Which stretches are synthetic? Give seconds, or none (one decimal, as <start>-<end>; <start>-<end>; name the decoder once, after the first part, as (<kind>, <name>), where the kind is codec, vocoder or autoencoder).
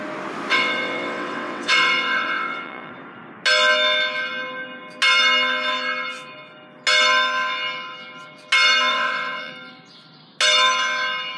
0.5-2.9 (vocoder, WaveNeXt); 8.9-9.5